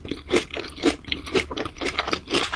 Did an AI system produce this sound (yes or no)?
yes